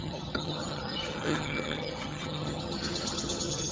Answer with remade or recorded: remade